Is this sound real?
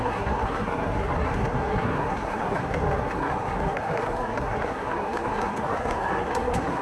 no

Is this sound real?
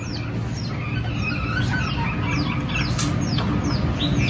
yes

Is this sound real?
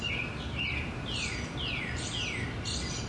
yes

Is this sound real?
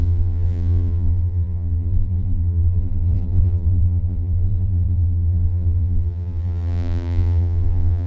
no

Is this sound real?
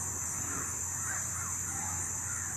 yes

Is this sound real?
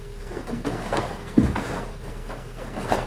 no